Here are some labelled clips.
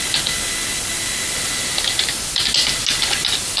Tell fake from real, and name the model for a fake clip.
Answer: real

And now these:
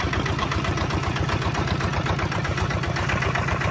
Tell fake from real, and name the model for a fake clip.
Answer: fake, vocoder, BigVGAN v2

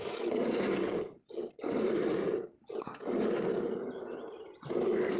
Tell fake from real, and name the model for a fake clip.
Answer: real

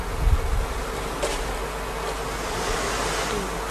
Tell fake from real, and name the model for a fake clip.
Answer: real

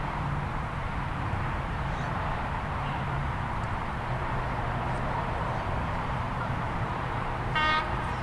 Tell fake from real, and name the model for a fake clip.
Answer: fake, vocoder, BigVGAN v2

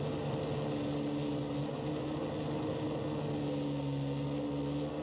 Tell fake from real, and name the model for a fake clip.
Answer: real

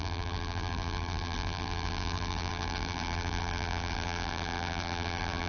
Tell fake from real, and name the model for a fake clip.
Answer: fake, vocoder, BigVGAN v2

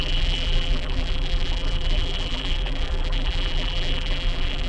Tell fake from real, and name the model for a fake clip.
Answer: fake, vocoder, BigVGAN v2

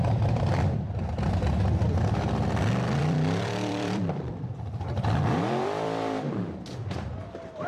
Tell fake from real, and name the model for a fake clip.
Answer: fake, vocoder, BigVGAN v2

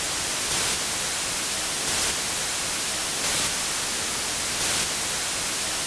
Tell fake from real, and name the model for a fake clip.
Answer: real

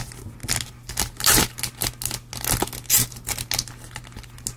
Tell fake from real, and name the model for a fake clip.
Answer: real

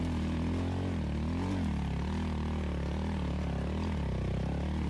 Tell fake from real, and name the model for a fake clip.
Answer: real